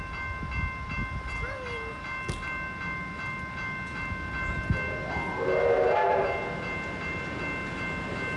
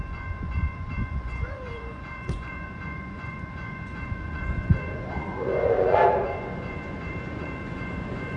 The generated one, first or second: second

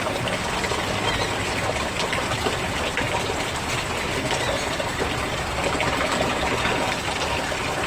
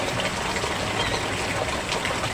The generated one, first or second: first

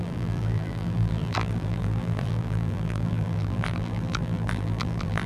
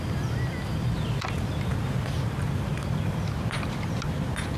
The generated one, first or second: first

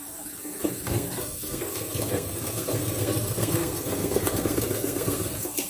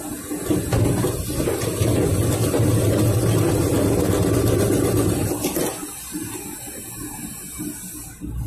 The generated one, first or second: first